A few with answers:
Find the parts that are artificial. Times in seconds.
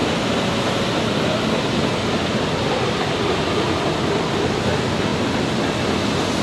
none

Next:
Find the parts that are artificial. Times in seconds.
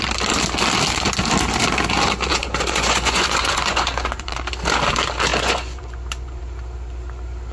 2.3-4.4; 5.3-6.4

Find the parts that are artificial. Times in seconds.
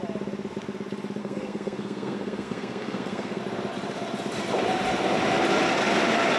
1.2-3.4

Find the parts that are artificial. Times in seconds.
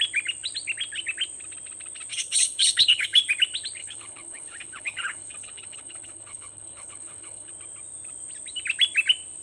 2.1-3.3; 3.8-7.5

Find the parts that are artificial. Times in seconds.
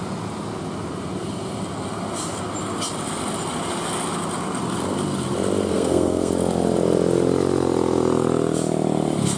5.7-6.3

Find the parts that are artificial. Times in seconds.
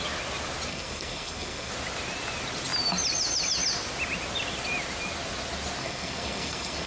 0.7-1.7; 5.8-6.9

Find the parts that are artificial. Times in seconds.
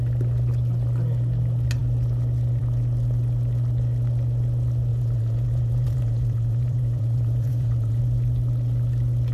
4.9-8.0